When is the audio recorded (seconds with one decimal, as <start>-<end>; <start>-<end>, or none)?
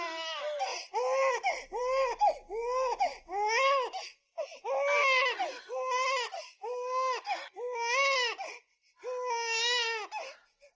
0.0-10.8